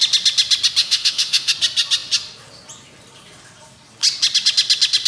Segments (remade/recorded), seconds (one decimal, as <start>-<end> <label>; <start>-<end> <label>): 0.0-0.8 recorded; 0.8-1.5 remade; 1.5-5.1 recorded